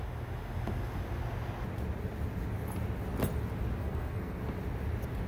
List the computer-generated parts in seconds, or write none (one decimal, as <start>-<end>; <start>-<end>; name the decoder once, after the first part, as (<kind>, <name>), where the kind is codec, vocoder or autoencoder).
3.8-4.4 (codec, SNAC)